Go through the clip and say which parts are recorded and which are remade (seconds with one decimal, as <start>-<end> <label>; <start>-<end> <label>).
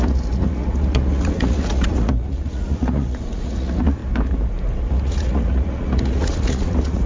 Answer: 0.0-4.0 remade; 4.0-4.9 recorded; 4.9-7.1 remade